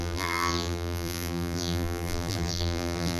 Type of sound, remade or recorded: remade